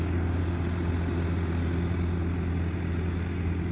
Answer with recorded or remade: recorded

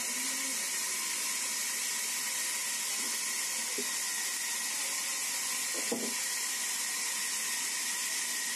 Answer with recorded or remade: recorded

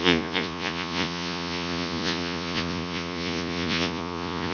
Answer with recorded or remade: remade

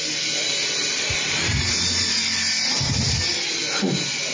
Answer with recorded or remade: recorded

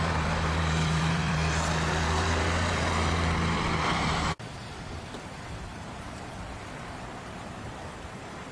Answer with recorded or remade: remade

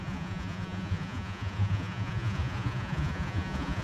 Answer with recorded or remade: remade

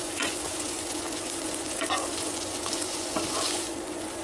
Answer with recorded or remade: remade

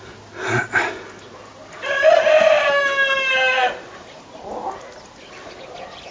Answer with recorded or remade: recorded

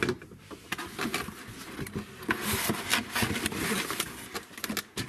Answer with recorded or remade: recorded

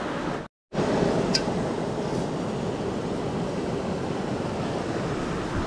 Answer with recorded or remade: recorded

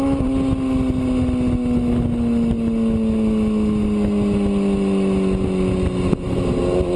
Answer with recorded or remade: recorded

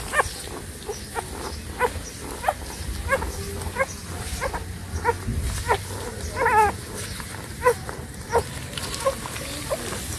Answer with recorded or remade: recorded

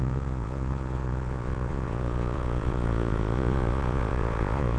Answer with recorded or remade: remade